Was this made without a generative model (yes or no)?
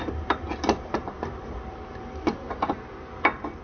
yes